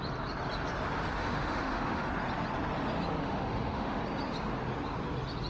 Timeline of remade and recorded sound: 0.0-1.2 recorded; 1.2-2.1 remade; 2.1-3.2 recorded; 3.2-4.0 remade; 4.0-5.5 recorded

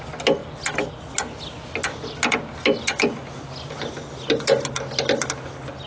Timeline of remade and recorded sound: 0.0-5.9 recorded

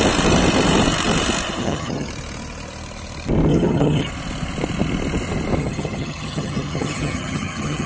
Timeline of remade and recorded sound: 0.0-1.6 recorded; 1.6-2.1 remade; 2.1-3.5 recorded; 3.5-4.1 remade; 4.1-5.6 recorded; 5.6-7.9 remade